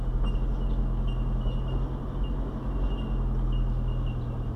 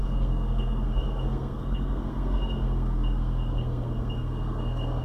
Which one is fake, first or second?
second